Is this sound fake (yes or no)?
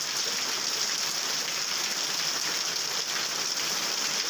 no